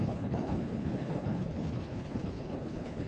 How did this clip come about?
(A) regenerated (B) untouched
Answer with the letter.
A